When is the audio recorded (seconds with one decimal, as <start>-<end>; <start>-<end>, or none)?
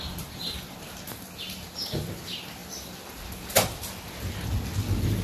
0.0-5.2